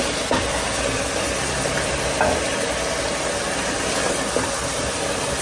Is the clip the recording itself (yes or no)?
yes